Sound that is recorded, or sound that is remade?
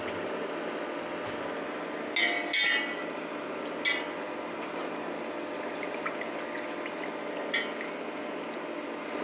recorded